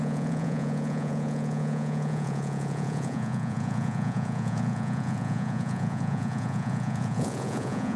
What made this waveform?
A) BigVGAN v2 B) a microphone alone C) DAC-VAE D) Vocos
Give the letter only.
D